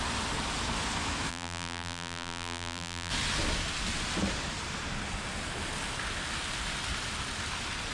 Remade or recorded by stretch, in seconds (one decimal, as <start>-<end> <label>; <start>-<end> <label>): 0.0-1.3 recorded; 1.3-3.1 remade; 3.1-7.9 recorded